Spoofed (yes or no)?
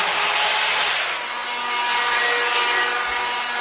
no